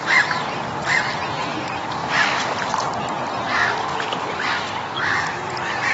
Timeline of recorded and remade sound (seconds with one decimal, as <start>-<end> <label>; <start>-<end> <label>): 0.0-2.0 recorded; 2.0-3.0 remade; 3.0-3.9 recorded; 3.9-5.9 remade